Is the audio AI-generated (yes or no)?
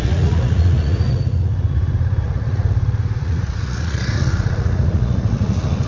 yes